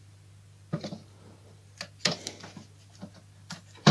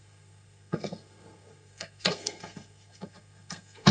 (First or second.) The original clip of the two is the first